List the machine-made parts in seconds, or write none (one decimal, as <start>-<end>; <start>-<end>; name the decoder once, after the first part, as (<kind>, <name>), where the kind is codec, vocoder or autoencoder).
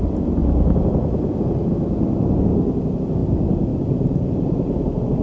none